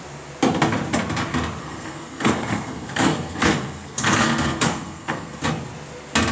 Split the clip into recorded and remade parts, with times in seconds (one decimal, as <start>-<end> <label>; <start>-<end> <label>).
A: 0.0-1.6 recorded; 1.6-5.4 remade; 5.4-6.3 recorded